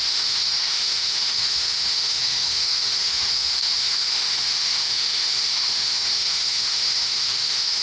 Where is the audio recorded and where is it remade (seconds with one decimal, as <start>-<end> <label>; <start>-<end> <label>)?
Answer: 0.0-7.8 remade